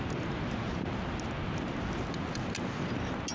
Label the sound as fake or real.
real